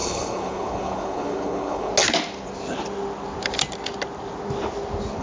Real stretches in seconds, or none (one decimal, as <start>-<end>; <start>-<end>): 1.9-5.2